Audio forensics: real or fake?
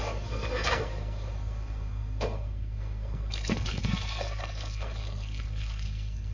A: fake